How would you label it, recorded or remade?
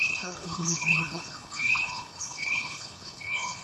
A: remade